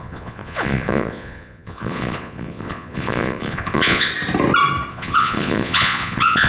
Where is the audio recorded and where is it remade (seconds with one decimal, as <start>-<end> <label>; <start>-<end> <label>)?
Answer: 0.0-4.1 remade; 4.1-4.9 recorded; 4.9-6.5 remade